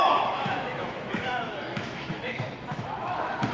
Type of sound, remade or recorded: remade